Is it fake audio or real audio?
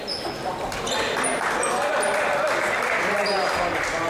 real